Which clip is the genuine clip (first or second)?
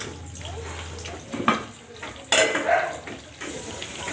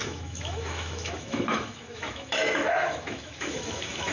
first